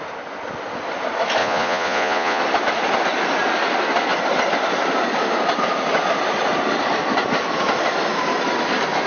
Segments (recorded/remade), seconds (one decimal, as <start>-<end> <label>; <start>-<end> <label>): 0.0-1.4 recorded; 1.4-2.4 remade; 2.4-9.1 recorded